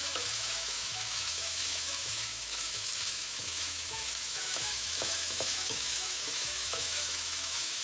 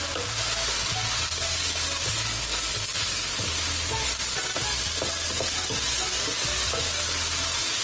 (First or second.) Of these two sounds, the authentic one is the second